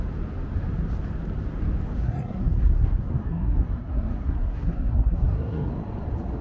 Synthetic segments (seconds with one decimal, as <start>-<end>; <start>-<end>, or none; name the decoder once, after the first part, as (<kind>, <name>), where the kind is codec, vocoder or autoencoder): 2.0-5.7 (codec, SNAC)